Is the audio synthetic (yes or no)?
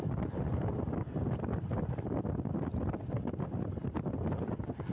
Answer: no